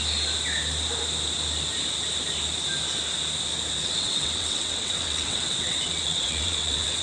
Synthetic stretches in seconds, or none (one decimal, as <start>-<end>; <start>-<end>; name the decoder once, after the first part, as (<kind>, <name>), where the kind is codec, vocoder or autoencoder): 3.8-7.0 (vocoder, WaveNeXt)